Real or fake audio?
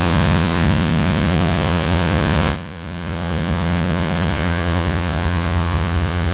fake